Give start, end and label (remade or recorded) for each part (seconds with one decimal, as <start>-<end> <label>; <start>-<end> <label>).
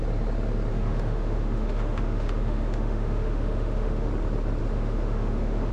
0.0-0.7 recorded; 0.7-4.1 remade; 4.1-4.6 recorded; 4.6-5.7 remade